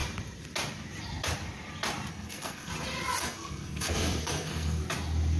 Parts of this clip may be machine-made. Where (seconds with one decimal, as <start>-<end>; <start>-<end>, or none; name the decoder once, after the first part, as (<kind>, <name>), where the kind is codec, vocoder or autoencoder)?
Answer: 2.1-2.7 (codec, SNAC); 3.2-4.8